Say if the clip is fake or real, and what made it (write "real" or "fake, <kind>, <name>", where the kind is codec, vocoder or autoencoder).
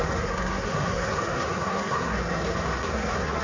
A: fake, codec, SNAC